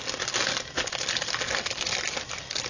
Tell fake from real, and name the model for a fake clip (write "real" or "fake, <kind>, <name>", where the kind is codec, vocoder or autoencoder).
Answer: real